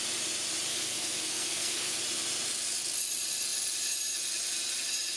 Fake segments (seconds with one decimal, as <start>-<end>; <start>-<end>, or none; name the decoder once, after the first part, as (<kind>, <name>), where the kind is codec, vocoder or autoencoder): 0.7-2.0 (codec, SNAC)